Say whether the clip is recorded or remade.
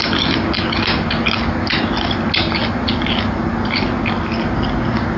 recorded